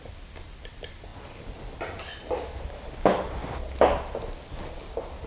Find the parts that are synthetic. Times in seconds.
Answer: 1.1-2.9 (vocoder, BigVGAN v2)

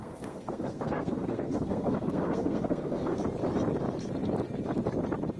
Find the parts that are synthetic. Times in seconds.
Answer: 0.0-3.2 (codec, SNAC)

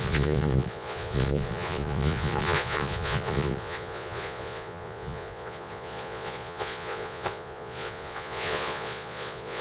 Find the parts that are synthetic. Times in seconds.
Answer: 0.0-9.6 (vocoder, Vocos)

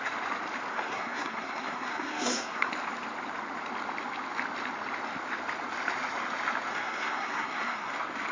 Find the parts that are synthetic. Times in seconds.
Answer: 0.7-2.7 (codec, SNAC); 6.7-7.9

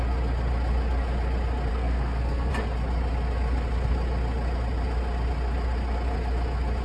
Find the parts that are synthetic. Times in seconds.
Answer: 1.7-2.5 (codec, SNAC)